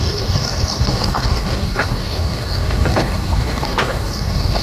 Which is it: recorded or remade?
remade